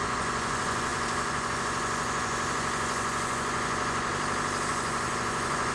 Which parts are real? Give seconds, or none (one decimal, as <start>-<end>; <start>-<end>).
4.1-4.7